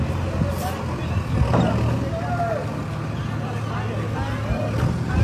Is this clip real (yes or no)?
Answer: yes